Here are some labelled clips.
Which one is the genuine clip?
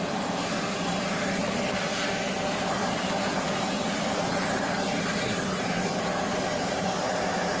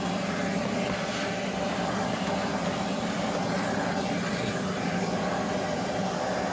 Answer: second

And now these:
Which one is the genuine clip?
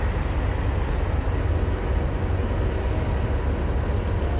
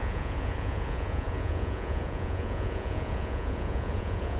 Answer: first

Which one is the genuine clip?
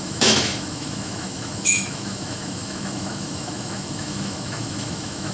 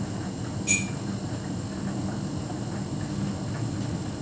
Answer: second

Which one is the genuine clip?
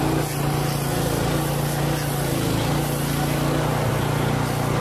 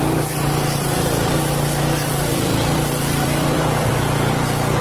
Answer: first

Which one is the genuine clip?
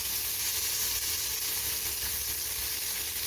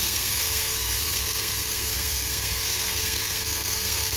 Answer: first